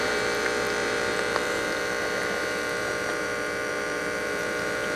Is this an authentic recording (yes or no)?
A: no